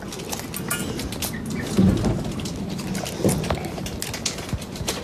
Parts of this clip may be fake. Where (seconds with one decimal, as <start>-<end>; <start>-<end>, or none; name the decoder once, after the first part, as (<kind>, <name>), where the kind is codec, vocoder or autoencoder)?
none

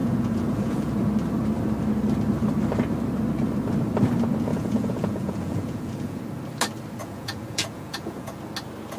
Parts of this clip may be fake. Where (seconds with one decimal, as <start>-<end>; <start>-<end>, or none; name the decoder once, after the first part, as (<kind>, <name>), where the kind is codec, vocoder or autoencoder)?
0.0-0.9 (vocoder, Vocos); 4.5-6.2; 7.0-8.4